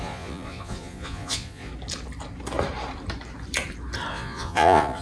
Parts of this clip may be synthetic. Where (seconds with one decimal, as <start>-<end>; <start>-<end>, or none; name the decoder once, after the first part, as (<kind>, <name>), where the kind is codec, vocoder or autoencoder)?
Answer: 0.0-1.7 (vocoder, Vocos); 4.1-5.0